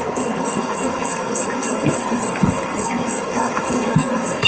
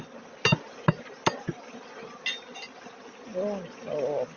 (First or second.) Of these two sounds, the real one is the second